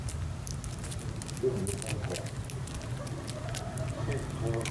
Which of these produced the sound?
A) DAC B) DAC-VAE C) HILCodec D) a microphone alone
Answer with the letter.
D